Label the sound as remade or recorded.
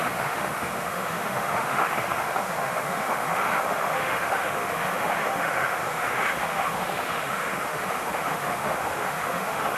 remade